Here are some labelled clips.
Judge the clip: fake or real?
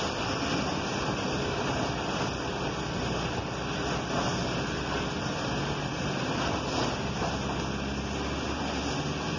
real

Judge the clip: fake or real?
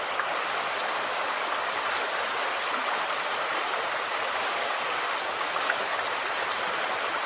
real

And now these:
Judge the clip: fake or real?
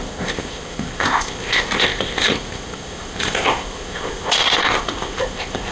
fake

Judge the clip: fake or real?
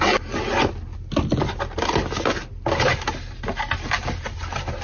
real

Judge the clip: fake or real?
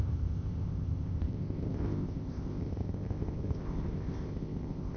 fake